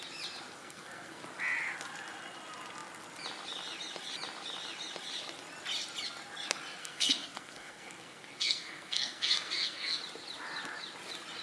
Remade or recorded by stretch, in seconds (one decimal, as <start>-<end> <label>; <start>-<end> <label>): 0.0-0.6 recorded; 0.6-1.2 remade; 1.2-6.8 recorded; 6.8-10.0 remade; 10.0-11.4 recorded